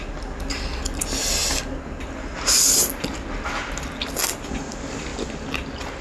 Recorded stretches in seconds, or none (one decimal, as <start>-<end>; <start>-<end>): 0.0-6.0